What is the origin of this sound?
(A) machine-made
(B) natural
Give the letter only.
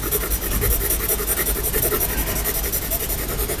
B